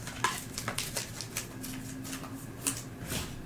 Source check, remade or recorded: recorded